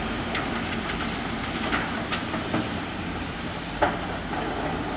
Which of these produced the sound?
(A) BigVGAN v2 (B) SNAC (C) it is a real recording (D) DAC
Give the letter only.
C